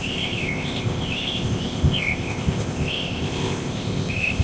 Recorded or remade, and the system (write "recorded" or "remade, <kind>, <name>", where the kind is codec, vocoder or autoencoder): remade, codec, ZipCodec